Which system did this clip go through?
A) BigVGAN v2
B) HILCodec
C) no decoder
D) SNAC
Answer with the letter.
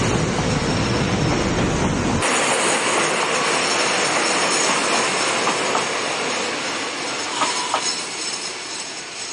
C